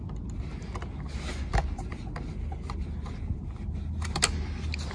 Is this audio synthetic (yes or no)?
no